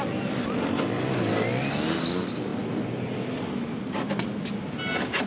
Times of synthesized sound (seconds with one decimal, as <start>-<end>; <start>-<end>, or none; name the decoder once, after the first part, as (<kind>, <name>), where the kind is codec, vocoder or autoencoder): none